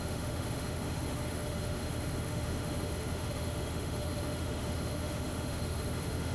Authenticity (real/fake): fake